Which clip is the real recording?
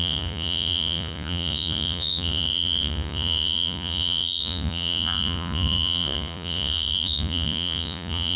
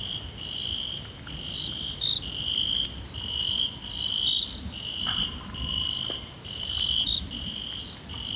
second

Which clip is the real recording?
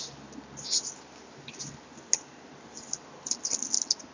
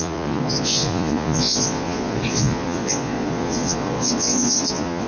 first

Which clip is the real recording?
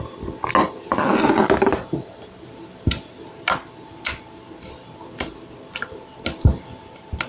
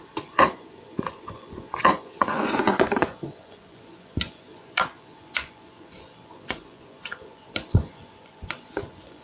first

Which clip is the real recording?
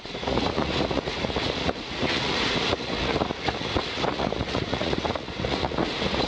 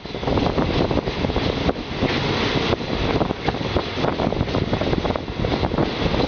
second